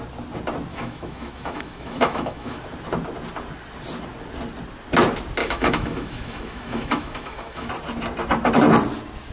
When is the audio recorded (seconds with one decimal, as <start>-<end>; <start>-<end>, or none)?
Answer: 0.0-0.7; 2.6-5.4; 7.7-9.3